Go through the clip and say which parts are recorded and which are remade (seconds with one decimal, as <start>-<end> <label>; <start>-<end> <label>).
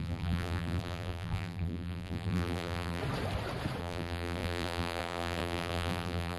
0.0-3.0 remade; 3.0-3.8 recorded; 3.8-6.4 remade